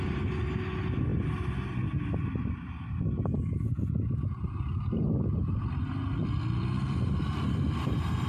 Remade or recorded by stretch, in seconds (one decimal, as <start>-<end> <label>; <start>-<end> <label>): 0.0-8.3 recorded